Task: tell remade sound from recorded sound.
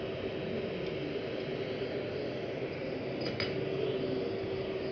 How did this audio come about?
recorded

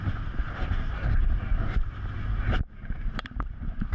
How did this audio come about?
remade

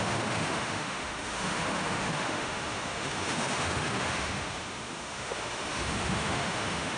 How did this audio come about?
remade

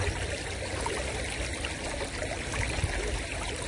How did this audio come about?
recorded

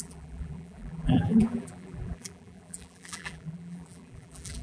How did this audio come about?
remade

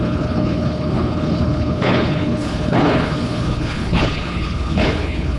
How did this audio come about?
remade